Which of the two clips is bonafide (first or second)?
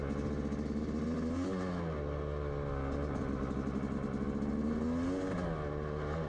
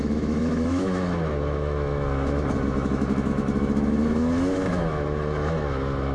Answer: first